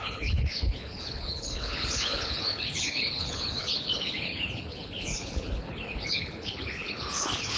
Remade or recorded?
remade